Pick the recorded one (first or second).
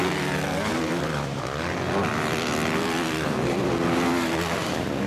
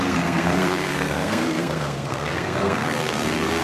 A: first